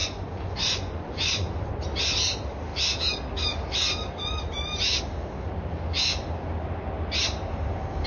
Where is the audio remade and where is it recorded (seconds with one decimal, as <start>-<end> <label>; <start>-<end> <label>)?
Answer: 0.0-1.5 remade; 1.5-8.1 recorded